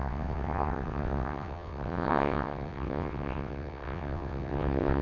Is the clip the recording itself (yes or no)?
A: no